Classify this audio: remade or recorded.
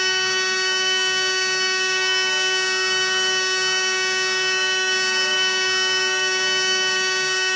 remade